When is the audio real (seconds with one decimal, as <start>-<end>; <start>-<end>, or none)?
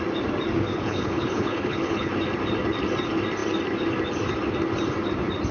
0.0-0.7; 2.1-5.5